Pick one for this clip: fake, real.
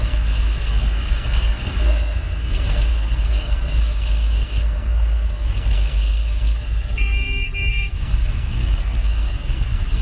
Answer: fake